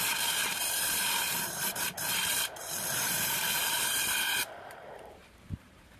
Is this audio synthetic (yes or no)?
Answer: yes